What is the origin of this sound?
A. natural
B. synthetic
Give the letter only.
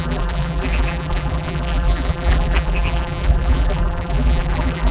B